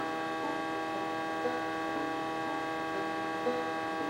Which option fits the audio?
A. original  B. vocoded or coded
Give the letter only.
A